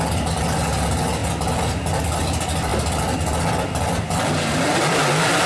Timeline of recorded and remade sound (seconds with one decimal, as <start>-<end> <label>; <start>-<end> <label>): 0.0-5.5 recorded